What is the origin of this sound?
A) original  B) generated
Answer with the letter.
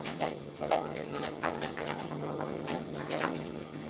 B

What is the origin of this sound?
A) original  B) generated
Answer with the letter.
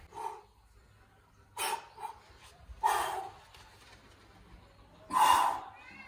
A